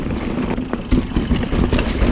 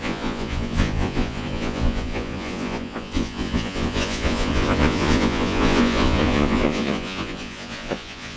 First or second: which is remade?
second